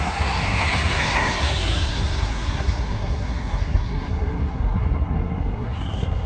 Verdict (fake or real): fake